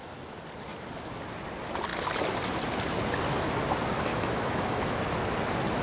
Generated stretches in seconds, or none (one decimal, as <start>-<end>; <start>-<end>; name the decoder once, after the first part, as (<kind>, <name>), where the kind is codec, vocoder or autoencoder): 4.1-5.0 (autoencoder, DAC-VAE)